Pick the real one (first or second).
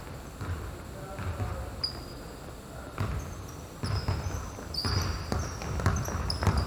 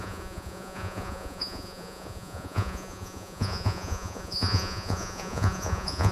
first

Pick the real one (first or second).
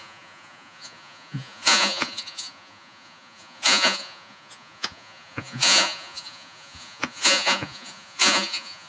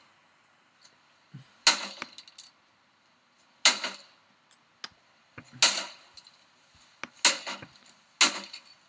second